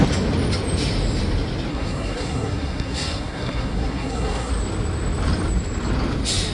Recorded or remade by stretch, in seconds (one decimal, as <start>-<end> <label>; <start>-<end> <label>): 0.0-1.7 recorded; 1.7-4.5 remade; 4.5-6.5 recorded